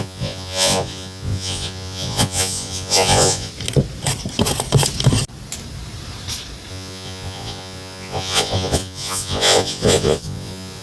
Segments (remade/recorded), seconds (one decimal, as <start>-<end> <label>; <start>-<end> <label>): 0.0-3.5 remade; 3.5-6.7 recorded; 6.7-10.8 remade